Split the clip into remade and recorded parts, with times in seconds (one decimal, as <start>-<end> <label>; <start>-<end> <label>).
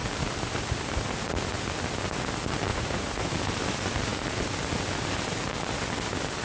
0.0-2.7 recorded; 2.7-3.3 remade; 3.3-6.4 recorded